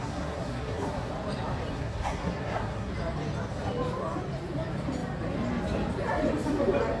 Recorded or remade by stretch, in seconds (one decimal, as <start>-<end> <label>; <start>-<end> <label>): 0.0-1.1 remade; 1.1-1.7 recorded; 1.7-2.9 remade; 2.9-7.0 recorded